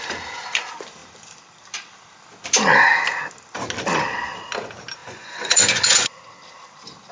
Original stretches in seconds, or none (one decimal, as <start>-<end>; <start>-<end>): 0.0-5.0; 6.2-7.1